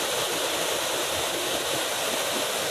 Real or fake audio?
real